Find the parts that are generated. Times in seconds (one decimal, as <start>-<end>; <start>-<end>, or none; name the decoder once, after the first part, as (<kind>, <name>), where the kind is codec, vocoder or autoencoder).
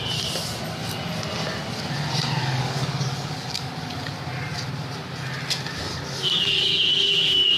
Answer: 2.4-4.1 (codec, DAC); 5.9-7.6